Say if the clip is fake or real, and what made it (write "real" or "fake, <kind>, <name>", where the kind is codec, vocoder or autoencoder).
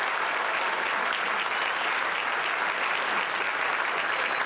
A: real